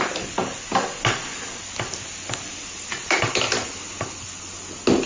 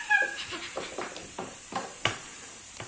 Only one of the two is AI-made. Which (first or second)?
second